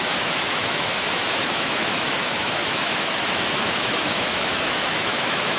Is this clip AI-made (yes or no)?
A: yes